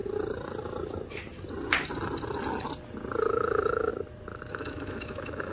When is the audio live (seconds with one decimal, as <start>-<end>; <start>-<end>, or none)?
0.0-3.3; 3.9-4.5